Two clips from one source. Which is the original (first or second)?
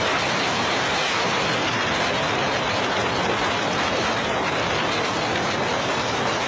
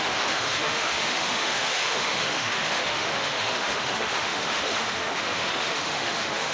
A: first